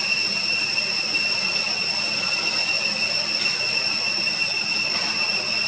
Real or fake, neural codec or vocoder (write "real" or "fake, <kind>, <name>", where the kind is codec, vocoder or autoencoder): real